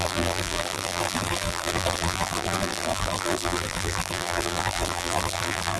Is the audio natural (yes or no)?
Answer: no